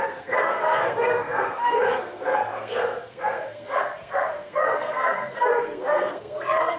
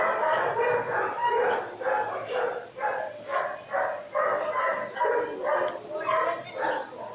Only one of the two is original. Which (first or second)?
second